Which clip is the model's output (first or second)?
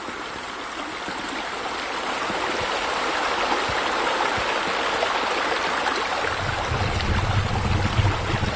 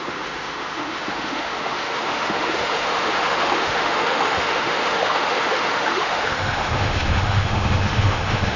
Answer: second